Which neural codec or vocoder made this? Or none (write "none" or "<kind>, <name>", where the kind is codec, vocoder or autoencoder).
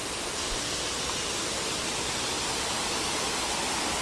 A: none